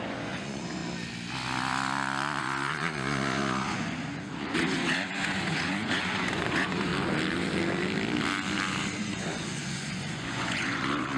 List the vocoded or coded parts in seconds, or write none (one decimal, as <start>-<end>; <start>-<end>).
0.0-0.8; 2.4-6.9; 9.0-11.2